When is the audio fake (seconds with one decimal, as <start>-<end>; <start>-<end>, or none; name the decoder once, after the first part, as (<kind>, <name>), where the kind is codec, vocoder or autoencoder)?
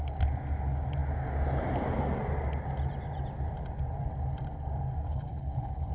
5.1-5.9 (codec, HILCodec)